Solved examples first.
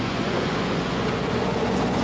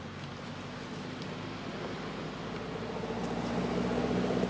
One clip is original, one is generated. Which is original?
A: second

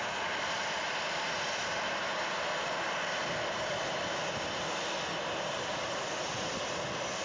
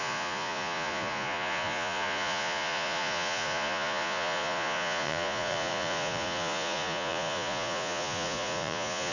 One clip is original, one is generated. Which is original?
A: first